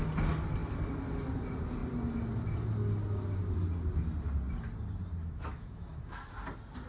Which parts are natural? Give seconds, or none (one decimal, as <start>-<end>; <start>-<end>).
0.0-5.2; 6.3-6.9